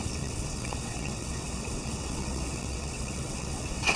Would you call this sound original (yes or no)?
no